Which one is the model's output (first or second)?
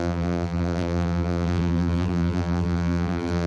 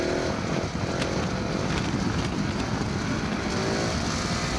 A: first